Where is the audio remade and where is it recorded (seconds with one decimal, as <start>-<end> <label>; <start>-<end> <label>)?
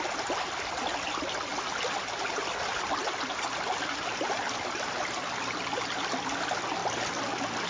0.0-7.7 recorded